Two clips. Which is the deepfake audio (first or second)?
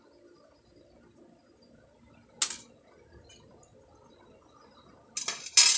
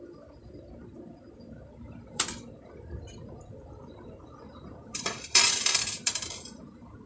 second